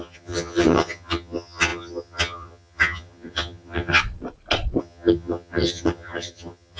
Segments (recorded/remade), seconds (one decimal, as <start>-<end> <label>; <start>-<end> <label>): 0.0-4.0 remade; 4.0-4.8 recorded; 4.8-6.8 remade